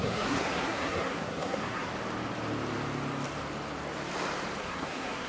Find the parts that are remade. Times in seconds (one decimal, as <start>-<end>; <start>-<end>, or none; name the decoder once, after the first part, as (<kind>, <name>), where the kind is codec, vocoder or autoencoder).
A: 0.0-1.9 (codec, SNAC); 4.6-5.3